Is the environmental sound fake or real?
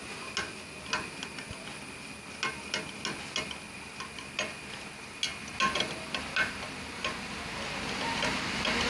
real